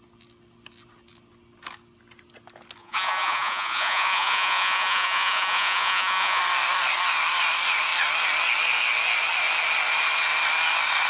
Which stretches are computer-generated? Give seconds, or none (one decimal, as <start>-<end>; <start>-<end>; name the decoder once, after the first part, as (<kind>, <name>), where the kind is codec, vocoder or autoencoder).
2.8-6.4 (vocoder, Vocos)